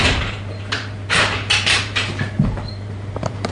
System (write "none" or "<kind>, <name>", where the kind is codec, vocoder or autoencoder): vocoder, BigVGAN v2